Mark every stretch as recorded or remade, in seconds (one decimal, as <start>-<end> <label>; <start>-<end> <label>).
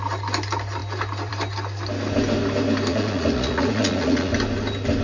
0.0-2.9 recorded; 2.9-4.3 remade; 4.3-5.0 recorded